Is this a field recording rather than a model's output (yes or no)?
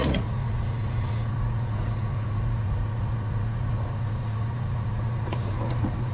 no